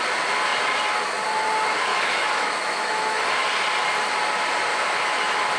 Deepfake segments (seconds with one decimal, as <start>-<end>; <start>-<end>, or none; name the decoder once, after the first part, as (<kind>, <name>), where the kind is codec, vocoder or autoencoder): 1.9-3.2 (autoencoder, DAC-VAE); 4.7-5.6